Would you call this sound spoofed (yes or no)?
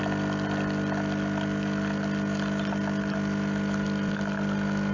no